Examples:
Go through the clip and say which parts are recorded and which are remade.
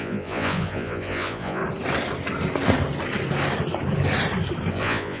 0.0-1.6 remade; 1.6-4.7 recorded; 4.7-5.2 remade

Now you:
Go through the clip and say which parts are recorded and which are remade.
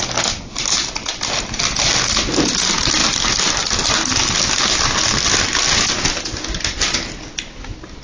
0.0-8.0 recorded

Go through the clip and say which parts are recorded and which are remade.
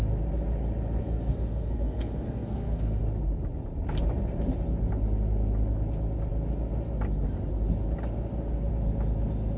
0.0-1.0 recorded; 1.0-3.0 remade; 3.0-9.6 recorded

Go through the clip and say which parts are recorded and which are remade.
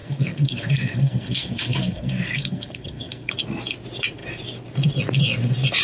0.0-3.3 remade; 3.3-5.8 recorded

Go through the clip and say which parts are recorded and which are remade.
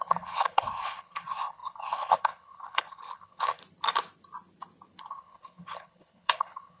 0.0-3.6 remade; 3.6-5.0 recorded; 5.0-6.8 remade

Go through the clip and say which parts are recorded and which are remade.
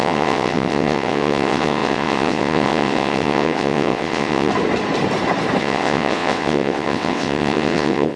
0.0-4.5 remade; 4.5-5.6 recorded; 5.6-8.2 remade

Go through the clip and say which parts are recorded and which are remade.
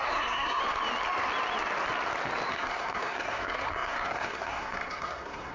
0.0-0.6 remade; 0.6-2.5 recorded; 2.5-5.5 remade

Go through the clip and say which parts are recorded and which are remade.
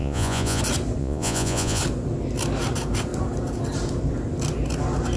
0.0-0.6 remade; 0.6-1.0 recorded; 1.0-1.8 remade; 1.8-5.2 recorded